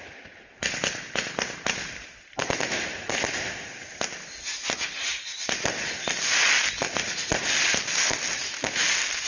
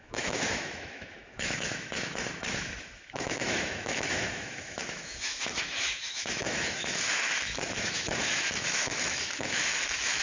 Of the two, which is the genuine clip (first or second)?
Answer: first